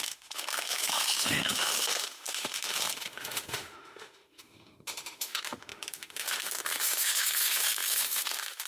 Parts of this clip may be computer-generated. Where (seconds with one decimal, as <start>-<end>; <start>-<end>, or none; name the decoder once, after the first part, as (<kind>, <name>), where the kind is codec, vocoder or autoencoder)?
0.0-8.7 (autoencoder, DAC-VAE)